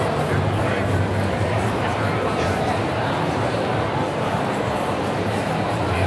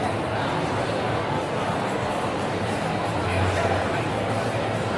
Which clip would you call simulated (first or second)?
first